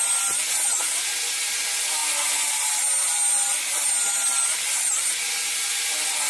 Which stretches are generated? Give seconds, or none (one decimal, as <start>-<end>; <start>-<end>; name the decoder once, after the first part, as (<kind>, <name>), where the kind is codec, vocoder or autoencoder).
none